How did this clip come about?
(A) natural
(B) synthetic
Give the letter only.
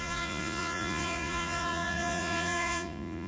B